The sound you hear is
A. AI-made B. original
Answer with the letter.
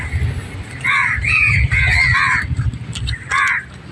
B